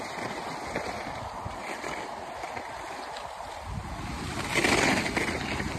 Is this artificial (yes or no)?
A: no